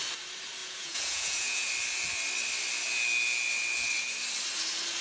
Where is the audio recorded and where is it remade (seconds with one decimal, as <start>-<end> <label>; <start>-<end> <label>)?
0.0-0.6 recorded; 0.6-1.7 remade; 1.7-5.0 recorded